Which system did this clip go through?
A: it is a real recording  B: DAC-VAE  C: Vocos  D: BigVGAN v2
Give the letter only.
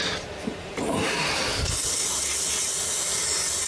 A